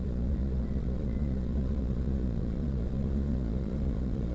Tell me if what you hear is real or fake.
fake